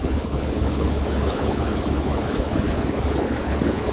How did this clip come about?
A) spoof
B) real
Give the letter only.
A